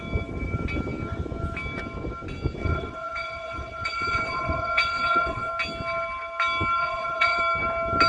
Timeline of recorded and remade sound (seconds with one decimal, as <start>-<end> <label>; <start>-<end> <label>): 0.0-2.6 recorded; 2.6-5.5 remade; 5.5-6.8 recorded; 6.8-7.4 remade; 7.4-8.1 recorded